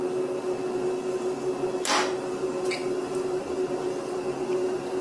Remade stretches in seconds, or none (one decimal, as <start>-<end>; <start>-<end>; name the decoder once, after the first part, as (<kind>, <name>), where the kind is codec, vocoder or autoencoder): none